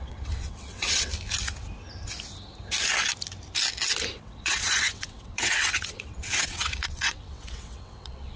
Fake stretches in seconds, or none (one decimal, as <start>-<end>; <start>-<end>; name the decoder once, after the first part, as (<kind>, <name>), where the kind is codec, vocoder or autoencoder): 0.0-1.1 (vocoder, WaveNeXt); 4.1-8.4